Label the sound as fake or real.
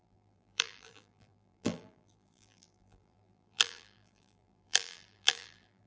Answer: fake